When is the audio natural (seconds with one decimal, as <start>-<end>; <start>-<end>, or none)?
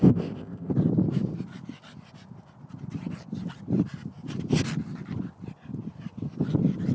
0.7-6.9